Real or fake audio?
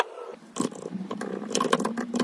fake